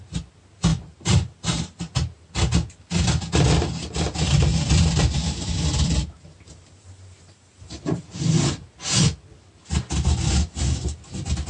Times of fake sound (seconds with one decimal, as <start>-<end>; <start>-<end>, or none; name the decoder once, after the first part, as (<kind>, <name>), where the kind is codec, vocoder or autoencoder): 0.7-1.6 (vocoder, BigVGAN v2); 4.5-8.5

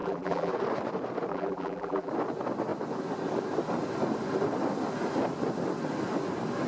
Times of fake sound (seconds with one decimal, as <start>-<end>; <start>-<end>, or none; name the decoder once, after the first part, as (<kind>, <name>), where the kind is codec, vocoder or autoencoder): 0.0-0.5 (vocoder, BigVGAN v2); 1.3-2.1

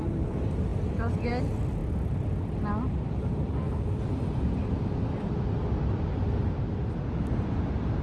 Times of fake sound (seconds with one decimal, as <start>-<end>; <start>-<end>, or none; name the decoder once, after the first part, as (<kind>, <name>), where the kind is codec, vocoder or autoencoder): none

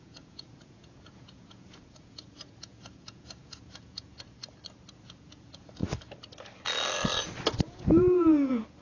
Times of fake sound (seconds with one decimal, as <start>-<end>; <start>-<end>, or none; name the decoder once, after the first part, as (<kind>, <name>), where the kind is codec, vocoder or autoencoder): 0.0-4.4 (vocoder, Vocos); 5.0-5.8; 7.6-8.8